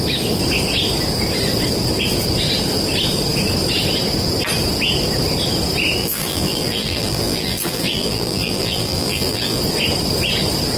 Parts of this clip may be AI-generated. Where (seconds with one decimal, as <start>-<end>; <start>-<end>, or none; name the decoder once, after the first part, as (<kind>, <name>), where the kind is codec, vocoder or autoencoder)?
6.0-9.6 (vocoder, BigVGAN v2)